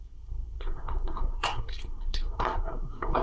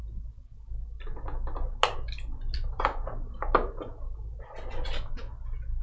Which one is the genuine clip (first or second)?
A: second